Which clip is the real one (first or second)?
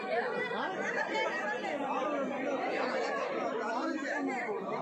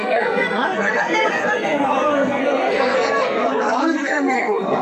first